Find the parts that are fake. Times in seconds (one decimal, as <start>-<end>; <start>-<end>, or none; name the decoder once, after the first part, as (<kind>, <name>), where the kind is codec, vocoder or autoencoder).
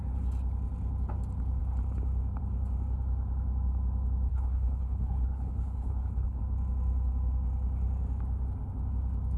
4.3-6.4 (codec, HILCodec)